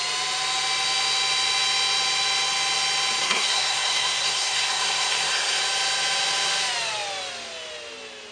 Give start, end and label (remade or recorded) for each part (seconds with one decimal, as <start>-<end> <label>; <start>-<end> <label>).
0.0-3.2 recorded; 3.2-5.6 remade; 5.6-8.3 recorded